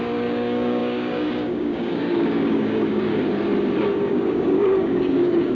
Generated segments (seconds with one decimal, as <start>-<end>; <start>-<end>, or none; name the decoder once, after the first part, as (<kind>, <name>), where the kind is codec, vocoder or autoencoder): 0.0-3.1 (codec, DAC); 4.1-5.5

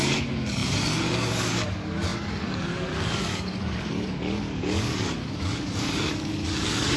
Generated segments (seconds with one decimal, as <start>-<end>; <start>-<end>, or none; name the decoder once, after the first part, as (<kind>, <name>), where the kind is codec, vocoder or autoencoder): 0.0-7.0 (codec, DAC)

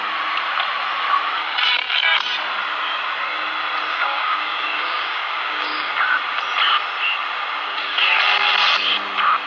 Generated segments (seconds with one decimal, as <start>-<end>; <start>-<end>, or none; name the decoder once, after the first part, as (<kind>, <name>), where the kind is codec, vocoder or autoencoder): 3.9-5.9 (codec, DAC)

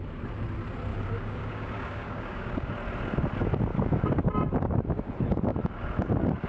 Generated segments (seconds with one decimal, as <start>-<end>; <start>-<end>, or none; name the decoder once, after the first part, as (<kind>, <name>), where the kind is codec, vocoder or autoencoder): 0.9-2.7 (codec, DAC); 3.7-4.2

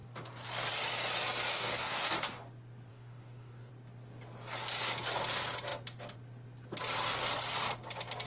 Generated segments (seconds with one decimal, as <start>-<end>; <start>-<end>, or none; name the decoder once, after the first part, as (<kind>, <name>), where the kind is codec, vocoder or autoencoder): 1.5-2.1 (codec, DAC); 2.9-3.7

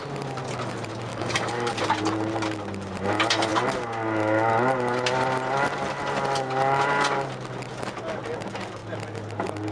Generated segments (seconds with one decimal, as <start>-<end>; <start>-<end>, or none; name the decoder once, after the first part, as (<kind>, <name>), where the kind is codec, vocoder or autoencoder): 1.1-1.7 (codec, DAC)

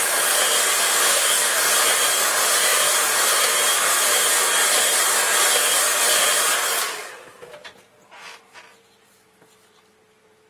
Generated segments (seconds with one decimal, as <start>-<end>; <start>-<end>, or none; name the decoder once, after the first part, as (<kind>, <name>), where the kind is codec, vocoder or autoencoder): 1.1-1.6 (codec, DAC)

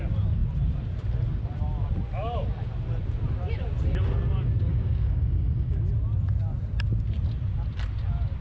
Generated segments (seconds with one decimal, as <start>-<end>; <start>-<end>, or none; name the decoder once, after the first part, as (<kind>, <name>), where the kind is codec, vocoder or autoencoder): 4.7-5.8 (codec, DAC)